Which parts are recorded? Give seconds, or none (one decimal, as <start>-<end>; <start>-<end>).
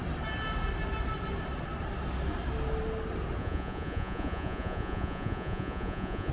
0.0-3.4